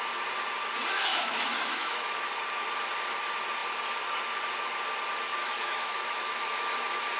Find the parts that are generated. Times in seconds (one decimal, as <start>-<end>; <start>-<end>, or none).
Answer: 1.1-2.2; 5.4-6.7